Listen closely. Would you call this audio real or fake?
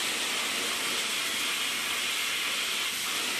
real